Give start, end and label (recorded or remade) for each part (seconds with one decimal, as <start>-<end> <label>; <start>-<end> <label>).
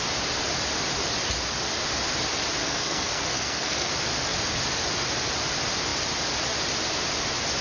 0.0-2.6 recorded; 2.6-3.9 remade; 3.9-7.6 recorded